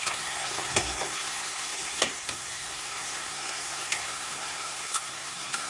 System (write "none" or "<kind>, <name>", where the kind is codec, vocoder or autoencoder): codec, SNAC